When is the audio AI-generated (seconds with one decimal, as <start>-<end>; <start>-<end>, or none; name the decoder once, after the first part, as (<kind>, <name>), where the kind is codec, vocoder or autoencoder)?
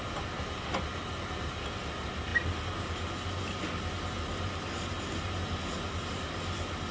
none